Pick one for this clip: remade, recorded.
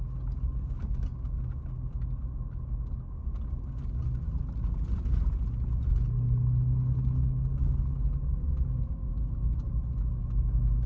recorded